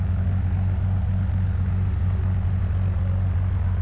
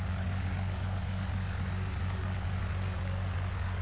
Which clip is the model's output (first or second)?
second